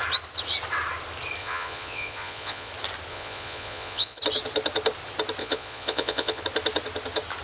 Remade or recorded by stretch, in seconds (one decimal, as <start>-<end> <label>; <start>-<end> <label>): 0.0-1.4 recorded; 1.4-2.7 remade; 2.7-3.1 recorded; 3.1-4.2 remade; 4.2-5.4 recorded; 5.4-6.4 remade; 6.4-7.4 recorded